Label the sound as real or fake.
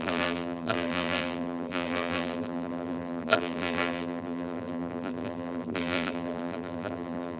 fake